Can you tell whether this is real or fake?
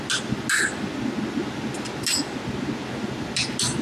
real